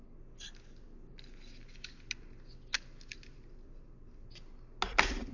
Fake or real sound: real